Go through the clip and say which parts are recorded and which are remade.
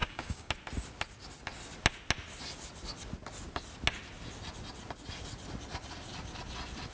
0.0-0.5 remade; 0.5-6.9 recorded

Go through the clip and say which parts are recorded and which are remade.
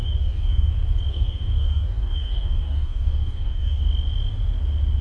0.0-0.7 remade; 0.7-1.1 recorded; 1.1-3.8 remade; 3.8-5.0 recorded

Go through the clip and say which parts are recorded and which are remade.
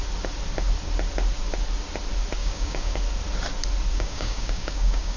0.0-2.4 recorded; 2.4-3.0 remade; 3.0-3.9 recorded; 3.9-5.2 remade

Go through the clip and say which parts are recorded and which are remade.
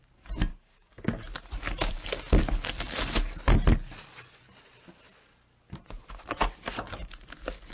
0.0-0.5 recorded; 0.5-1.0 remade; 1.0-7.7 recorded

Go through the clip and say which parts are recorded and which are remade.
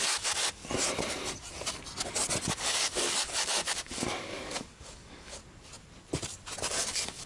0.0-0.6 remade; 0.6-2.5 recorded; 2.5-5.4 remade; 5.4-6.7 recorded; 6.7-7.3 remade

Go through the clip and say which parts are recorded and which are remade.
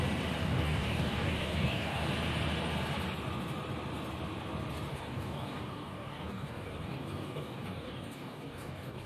0.0-0.4 recorded; 0.4-2.1 remade; 2.1-4.9 recorded; 4.9-9.1 remade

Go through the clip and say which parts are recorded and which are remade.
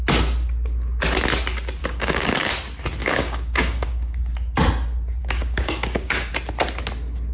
0.0-1.8 recorded; 1.8-2.5 remade; 2.5-3.0 recorded; 3.0-4.2 remade; 4.2-5.2 recorded; 5.2-6.3 remade; 6.3-7.3 recorded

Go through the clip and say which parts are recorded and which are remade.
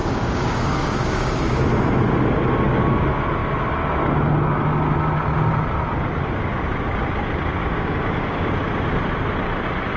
0.0-1.6 remade; 1.6-7.6 recorded; 7.6-8.5 remade; 8.5-10.0 recorded